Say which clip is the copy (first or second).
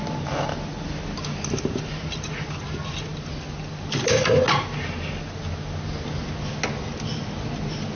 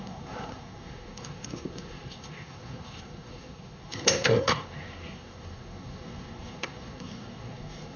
second